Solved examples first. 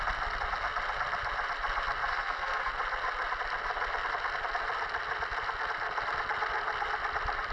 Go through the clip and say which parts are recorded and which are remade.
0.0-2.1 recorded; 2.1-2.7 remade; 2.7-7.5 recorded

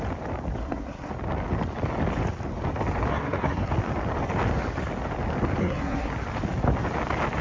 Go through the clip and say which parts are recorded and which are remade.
0.0-0.6 recorded; 0.6-1.1 remade; 1.1-3.1 recorded; 3.1-3.7 remade; 3.7-5.6 recorded; 5.6-6.1 remade; 6.1-7.4 recorded